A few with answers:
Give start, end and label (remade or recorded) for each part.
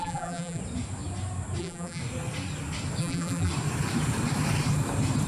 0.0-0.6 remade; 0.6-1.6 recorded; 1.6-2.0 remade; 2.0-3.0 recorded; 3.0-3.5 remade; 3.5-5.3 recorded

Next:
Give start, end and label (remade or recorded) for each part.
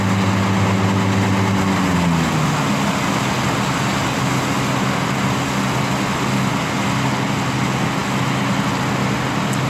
0.0-9.7 recorded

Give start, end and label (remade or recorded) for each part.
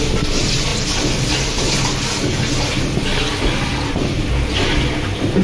0.0-5.4 recorded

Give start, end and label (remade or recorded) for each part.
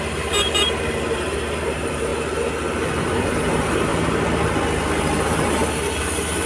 0.0-2.1 remade; 2.1-2.8 recorded; 2.8-3.9 remade; 3.9-6.5 recorded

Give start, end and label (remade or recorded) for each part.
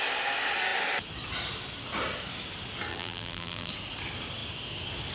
0.0-2.9 recorded; 2.9-3.7 remade; 3.7-5.1 recorded